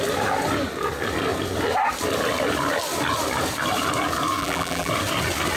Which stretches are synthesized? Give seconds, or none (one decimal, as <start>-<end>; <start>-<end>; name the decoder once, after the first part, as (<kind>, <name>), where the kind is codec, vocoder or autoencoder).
4.4-4.9 (vocoder, BigVGAN v2)